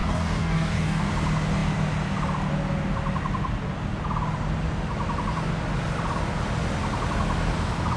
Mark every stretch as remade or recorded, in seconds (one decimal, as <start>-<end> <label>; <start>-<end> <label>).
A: 0.0-1.1 remade; 1.1-8.0 recorded

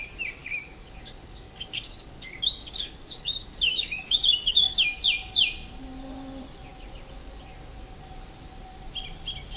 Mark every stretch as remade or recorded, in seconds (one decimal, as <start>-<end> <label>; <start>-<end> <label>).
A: 0.0-0.4 recorded; 0.4-5.0 remade; 5.0-9.6 recorded

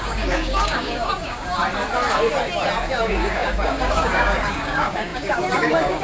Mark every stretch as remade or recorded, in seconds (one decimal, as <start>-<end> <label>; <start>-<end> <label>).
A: 0.0-1.6 remade; 1.6-2.9 recorded; 2.9-6.0 remade

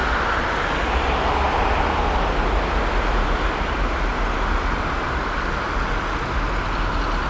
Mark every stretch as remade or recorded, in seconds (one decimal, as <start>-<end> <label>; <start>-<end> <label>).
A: 0.0-7.3 recorded

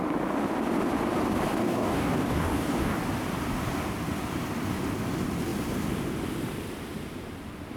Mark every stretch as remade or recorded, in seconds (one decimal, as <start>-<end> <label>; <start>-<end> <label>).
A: 0.0-1.6 recorded; 1.6-3.0 remade; 3.0-7.8 recorded